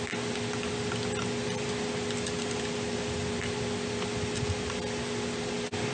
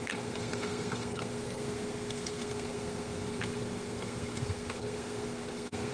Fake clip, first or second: second